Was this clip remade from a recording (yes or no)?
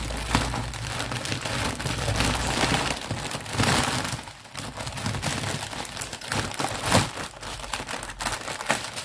no